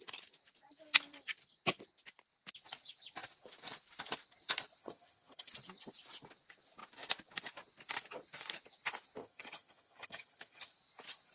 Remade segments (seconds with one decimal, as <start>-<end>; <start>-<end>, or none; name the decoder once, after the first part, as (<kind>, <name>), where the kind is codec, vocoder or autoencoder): 4.8-5.5 (vocoder, HiFi-GAN); 9.2-10.7